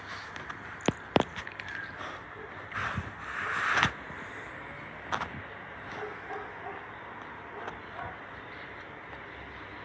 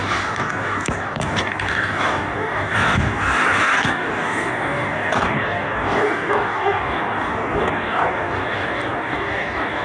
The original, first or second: first